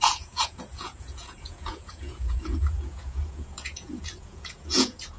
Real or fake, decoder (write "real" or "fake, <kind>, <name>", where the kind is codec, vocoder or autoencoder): fake, vocoder, Vocos